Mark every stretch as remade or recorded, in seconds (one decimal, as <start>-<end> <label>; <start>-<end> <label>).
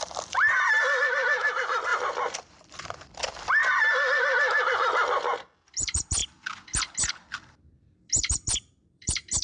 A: 0.0-6.2 remade; 6.2-7.1 recorded; 7.1-9.4 remade